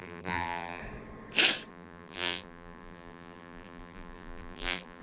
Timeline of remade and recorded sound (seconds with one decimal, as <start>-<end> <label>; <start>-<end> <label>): 0.0-0.8 remade; 0.8-1.7 recorded; 1.7-5.0 remade